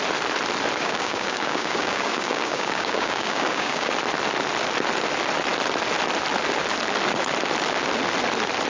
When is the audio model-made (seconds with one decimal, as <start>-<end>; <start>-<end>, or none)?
0.8-3.9